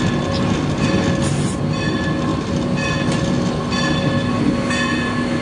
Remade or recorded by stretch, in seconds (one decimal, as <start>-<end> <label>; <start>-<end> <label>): 0.0-5.4 recorded